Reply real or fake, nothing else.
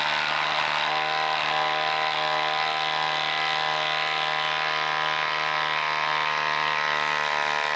real